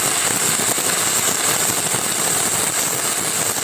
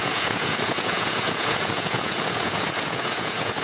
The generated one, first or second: second